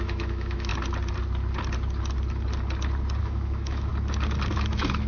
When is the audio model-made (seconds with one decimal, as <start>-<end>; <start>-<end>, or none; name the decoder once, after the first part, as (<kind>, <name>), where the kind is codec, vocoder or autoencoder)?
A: 0.0-0.7 (autoencoder, DAC-VAE); 3.2-3.9; 4.5-5.1